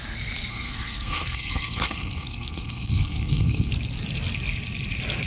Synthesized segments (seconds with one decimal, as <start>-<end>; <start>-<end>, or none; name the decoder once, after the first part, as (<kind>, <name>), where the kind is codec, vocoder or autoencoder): 0.5-3.7 (codec, SNAC)